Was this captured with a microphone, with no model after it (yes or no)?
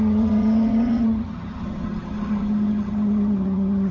no